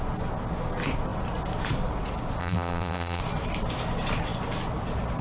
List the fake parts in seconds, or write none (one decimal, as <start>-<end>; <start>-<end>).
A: 2.4-3.2